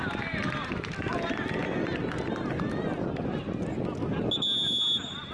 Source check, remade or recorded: recorded